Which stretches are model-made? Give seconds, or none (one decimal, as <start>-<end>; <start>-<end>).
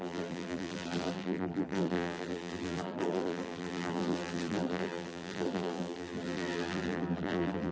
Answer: 0.0-7.7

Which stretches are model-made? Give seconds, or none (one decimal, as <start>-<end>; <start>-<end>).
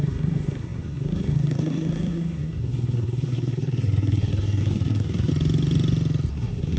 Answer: 0.0-5.3; 6.3-6.8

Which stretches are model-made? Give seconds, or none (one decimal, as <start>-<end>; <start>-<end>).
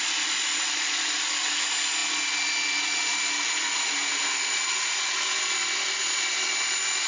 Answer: none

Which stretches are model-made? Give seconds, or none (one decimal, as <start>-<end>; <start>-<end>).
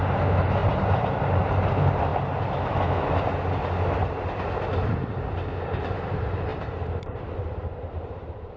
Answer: 0.6-1.4; 6.5-8.6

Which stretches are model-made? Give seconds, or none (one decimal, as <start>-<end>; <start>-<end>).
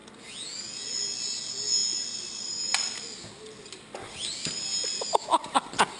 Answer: none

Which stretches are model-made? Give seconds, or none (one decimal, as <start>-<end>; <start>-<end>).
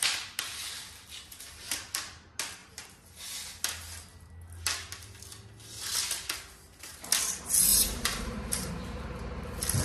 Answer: 2.6-3.2; 7.7-8.7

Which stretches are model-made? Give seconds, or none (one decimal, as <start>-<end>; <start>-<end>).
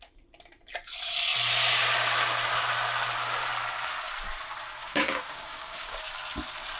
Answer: 4.8-6.1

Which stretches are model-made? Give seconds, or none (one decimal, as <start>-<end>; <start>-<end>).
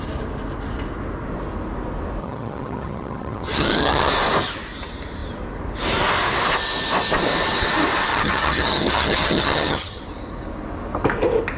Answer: 2.2-4.1; 8.1-10.0